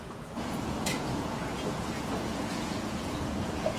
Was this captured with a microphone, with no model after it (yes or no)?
no